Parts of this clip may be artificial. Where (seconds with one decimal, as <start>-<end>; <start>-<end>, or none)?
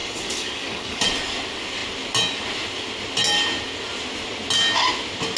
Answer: 0.0-1.0